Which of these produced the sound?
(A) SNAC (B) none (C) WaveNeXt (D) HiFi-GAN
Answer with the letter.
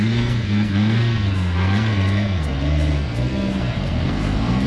A